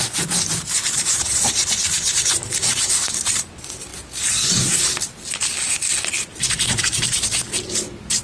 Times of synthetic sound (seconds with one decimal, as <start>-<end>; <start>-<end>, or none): 0.0-3.9; 6.8-8.2